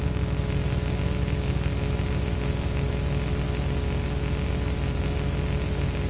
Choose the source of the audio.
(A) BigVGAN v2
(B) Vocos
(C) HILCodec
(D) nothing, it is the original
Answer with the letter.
D